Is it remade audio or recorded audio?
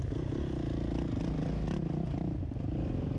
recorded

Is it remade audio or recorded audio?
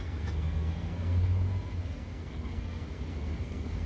remade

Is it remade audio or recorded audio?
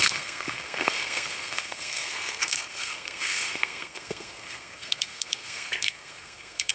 remade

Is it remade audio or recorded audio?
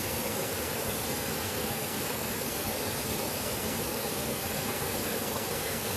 remade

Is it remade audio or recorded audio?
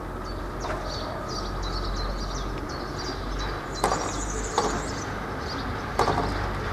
recorded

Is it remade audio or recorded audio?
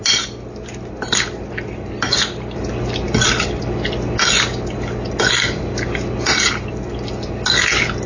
recorded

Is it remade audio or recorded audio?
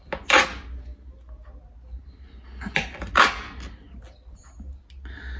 recorded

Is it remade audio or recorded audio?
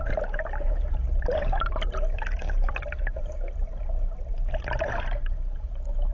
recorded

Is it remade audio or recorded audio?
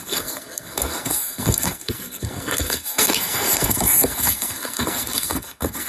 remade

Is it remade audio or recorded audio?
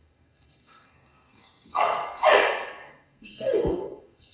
remade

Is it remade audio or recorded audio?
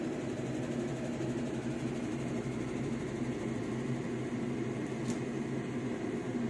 recorded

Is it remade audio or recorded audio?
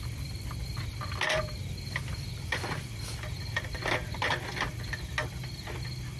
recorded